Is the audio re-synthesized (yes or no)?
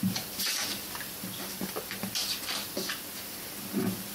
yes